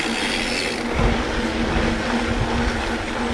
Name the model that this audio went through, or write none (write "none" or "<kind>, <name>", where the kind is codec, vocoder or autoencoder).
none